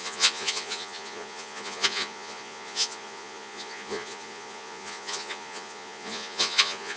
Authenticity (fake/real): fake